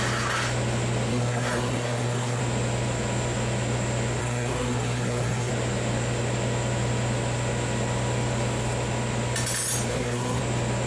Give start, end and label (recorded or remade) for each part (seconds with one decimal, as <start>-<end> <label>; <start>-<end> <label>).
0.0-1.1 recorded; 1.1-2.4 remade; 2.4-4.2 recorded; 4.2-5.5 remade; 5.5-9.9 recorded; 9.9-10.4 remade; 10.4-10.9 recorded